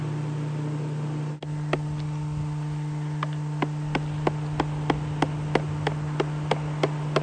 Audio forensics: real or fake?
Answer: real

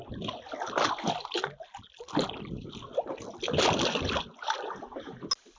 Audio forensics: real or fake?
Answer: real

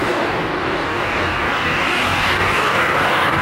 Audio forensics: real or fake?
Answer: fake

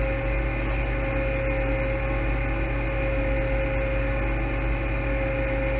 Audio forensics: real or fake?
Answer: real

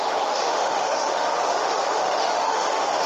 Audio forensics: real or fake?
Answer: fake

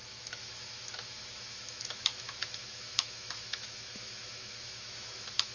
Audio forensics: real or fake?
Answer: fake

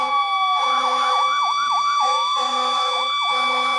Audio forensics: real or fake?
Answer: fake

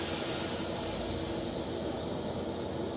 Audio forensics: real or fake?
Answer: real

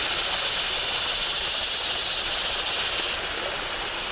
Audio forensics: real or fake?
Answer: real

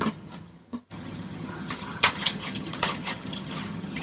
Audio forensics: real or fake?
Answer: fake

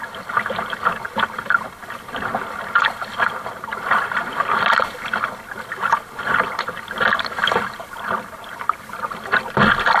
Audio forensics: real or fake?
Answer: real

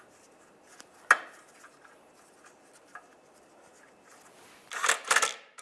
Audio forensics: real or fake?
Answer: real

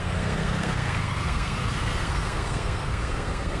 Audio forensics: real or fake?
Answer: fake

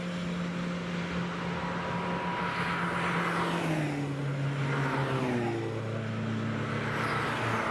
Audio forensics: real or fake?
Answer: real